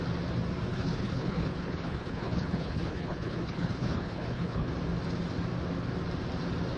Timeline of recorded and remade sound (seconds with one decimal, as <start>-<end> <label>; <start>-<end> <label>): 0.0-0.7 recorded; 0.7-4.7 remade; 4.7-6.8 recorded